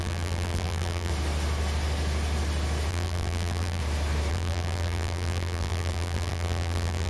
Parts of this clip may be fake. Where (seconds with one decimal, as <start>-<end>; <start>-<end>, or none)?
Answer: 0.0-1.1; 2.9-3.8; 4.3-7.1